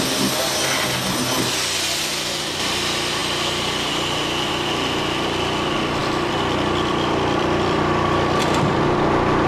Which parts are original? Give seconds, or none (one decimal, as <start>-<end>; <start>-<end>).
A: 0.0-6.0; 8.4-9.5